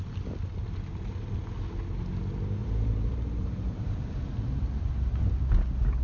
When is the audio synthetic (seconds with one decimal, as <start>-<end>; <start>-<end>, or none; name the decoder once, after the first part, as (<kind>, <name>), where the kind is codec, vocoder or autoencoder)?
2.6-4.9 (vocoder, BigVGAN v2)